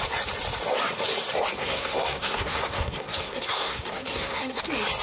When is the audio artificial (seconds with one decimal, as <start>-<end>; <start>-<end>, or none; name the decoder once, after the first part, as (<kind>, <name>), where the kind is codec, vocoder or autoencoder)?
1.6-4.6 (codec, SNAC)